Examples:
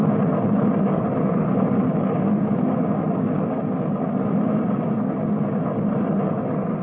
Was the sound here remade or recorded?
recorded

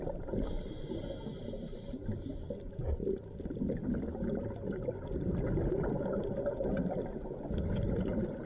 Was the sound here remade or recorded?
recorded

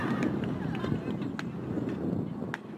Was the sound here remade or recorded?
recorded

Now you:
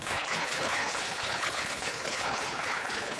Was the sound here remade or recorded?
remade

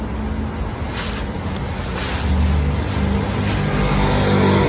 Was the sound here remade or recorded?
recorded